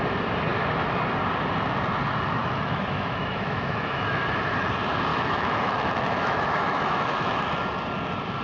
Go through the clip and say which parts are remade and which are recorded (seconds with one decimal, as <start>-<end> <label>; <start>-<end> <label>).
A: 0.0-2.4 recorded; 2.4-4.4 remade; 4.4-5.1 recorded; 5.1-7.4 remade; 7.4-8.4 recorded